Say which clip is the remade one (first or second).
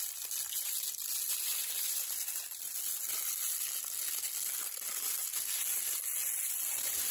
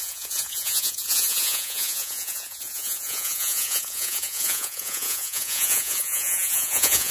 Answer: second